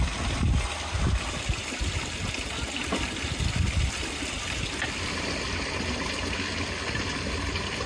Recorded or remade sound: recorded